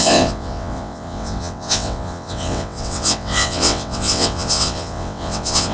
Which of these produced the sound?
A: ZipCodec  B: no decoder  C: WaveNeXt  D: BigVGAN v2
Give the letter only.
C